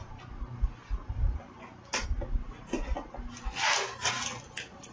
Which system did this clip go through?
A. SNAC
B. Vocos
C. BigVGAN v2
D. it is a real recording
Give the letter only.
D